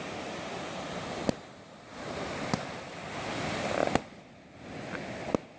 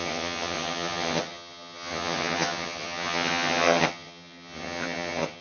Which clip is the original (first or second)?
first